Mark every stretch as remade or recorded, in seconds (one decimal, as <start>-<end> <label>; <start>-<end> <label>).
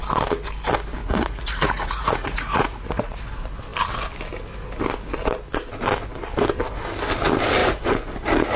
0.0-1.0 recorded; 1.0-3.2 remade; 3.2-8.6 recorded